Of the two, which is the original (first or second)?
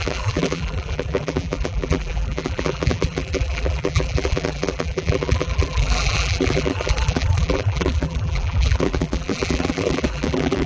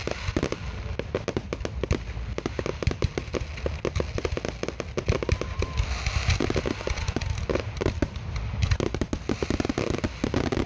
second